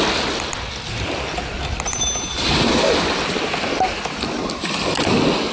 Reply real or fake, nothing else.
real